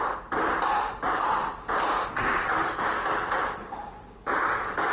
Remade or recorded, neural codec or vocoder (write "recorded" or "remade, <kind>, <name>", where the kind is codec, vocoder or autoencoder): recorded